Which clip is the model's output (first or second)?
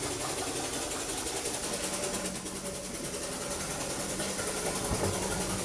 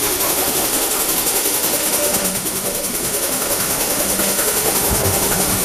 second